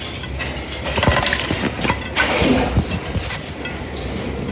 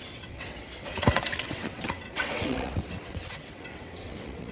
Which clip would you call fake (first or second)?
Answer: second